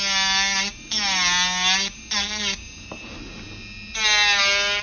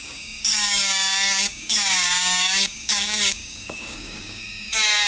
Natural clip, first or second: first